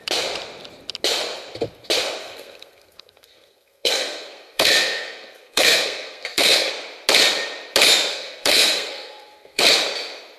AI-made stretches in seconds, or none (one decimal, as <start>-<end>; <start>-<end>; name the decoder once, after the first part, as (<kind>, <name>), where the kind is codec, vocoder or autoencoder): 2.2-6.7 (codec, SNAC); 8.1-9.6